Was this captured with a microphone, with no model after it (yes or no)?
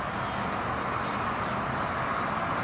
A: yes